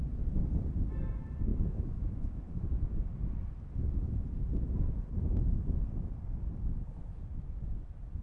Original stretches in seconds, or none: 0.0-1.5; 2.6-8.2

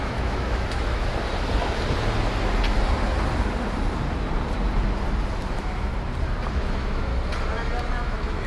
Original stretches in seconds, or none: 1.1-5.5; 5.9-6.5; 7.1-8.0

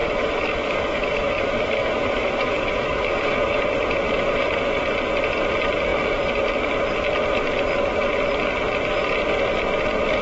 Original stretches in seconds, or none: 3.6-10.2

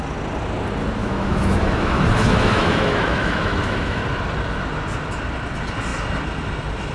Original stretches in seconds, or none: 0.0-1.0; 4.0-6.9

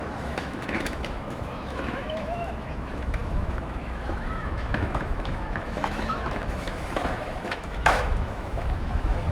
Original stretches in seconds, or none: none

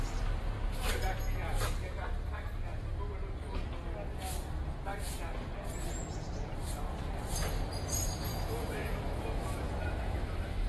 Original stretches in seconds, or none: 0.0-8.3

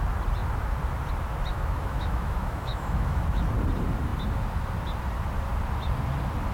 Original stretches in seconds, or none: 0.0-1.5; 3.4-6.5

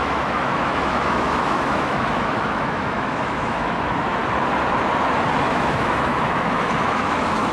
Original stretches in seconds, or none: 4.2-5.5